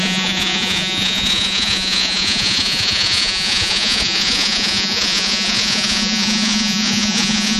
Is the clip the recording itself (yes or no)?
no